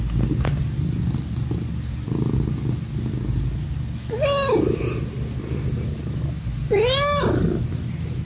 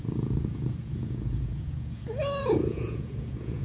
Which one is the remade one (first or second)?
second